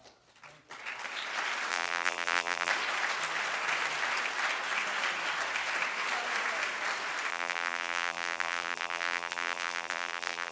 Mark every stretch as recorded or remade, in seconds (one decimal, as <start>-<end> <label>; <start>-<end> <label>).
0.0-1.7 recorded; 1.7-2.7 remade; 2.7-7.3 recorded; 7.3-10.5 remade